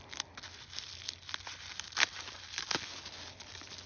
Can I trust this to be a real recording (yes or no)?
yes